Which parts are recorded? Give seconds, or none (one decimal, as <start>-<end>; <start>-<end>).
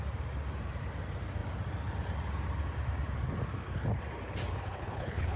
0.0-4.5